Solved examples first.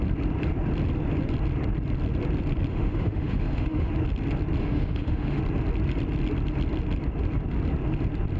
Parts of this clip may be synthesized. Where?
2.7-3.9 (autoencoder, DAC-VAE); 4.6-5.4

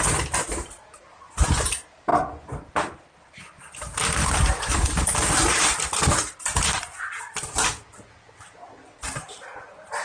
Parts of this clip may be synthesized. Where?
none

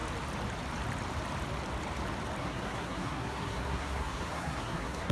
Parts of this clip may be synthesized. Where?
2.4-5.1 (codec, SNAC)

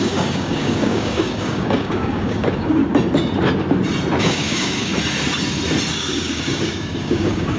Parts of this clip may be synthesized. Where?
0.0-2.8 (codec, DAC); 4.2-4.9; 5.9-7.6

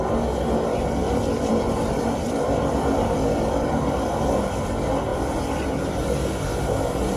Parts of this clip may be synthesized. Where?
1.0-4.5 (vocoder, BigVGAN v2); 5.1-6.6

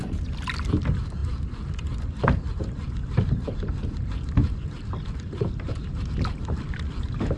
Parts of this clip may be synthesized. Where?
1.2-2.0 (vocoder, BigVGAN v2); 4.4-5.8